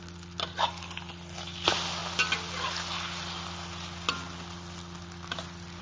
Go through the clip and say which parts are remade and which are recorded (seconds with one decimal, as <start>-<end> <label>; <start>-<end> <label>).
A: 0.0-5.8 recorded